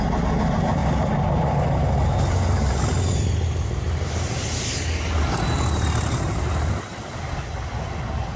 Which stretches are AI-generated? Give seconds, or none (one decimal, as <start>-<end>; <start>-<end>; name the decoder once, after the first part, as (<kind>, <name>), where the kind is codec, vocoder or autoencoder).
none